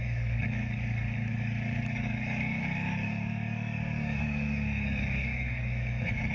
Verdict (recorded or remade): remade